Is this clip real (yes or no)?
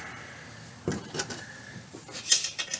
yes